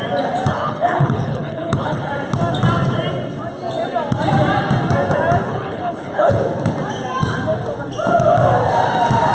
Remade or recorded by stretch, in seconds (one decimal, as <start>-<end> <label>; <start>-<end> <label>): 0.0-0.5 recorded; 0.5-2.1 remade; 2.1-5.5 recorded; 5.5-6.4 remade; 6.4-9.3 recorded